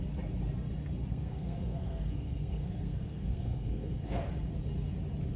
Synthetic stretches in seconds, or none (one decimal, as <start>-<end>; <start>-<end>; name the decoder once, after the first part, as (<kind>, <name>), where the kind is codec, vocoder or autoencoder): 1.1-4.3 (codec, SNAC)